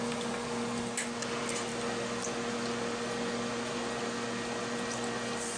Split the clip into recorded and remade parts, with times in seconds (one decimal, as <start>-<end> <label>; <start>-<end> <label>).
0.0-5.6 recorded